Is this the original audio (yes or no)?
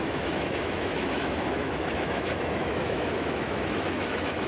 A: no